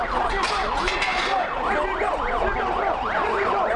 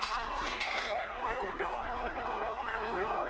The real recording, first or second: first